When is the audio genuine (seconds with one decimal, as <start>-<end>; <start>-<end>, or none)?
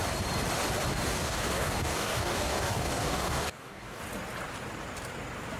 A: 0.0-0.9; 4.0-5.6